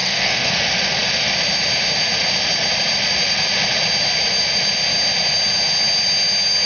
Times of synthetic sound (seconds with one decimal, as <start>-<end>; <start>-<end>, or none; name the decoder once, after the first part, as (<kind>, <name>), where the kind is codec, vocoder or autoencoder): 0.0-0.5 (codec, SNAC)